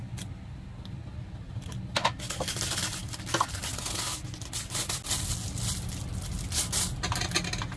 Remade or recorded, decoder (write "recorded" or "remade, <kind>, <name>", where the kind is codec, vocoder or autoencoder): recorded